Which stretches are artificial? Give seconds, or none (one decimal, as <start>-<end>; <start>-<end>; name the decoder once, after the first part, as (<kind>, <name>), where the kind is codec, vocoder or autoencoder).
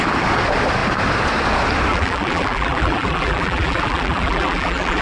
1.9-5.0 (vocoder, BigVGAN v2)